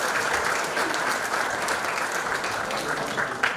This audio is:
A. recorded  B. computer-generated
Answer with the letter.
B